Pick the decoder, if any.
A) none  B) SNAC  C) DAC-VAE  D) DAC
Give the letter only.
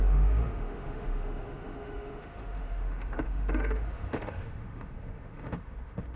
C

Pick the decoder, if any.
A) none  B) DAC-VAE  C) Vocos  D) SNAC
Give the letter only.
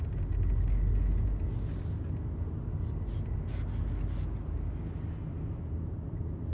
A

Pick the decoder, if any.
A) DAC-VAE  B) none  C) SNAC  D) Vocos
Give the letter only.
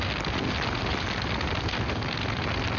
B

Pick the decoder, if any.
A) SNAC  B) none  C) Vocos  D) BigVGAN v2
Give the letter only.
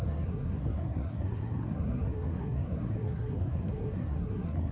A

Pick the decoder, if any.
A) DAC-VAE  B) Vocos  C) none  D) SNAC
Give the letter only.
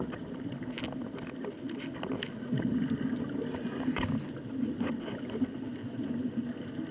C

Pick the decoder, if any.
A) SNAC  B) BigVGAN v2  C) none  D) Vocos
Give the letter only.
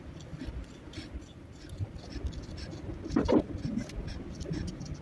C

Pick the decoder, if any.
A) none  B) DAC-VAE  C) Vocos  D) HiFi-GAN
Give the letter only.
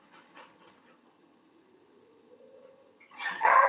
D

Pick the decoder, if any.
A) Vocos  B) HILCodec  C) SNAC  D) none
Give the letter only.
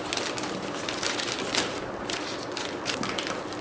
D